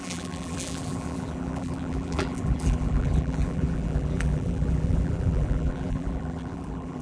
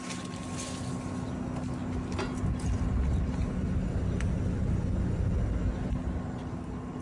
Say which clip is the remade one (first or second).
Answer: first